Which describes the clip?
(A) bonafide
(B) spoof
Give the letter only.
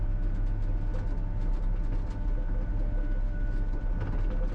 A